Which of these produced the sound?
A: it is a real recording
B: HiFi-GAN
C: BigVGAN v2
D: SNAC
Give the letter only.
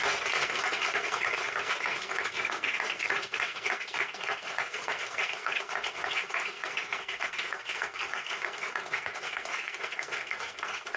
D